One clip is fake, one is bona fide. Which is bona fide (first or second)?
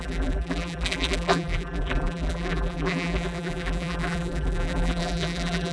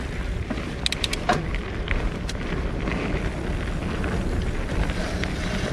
second